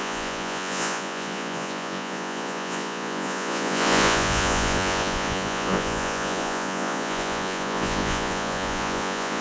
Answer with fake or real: fake